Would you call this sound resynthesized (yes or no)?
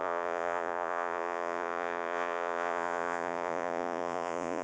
yes